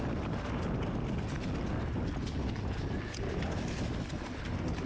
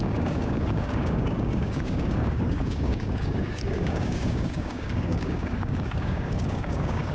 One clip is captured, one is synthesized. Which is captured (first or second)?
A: first